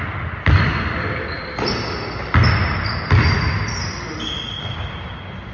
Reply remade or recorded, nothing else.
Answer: recorded